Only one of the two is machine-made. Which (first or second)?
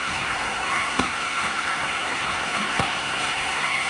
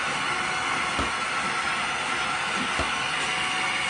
first